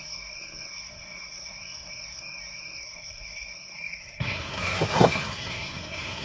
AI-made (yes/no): yes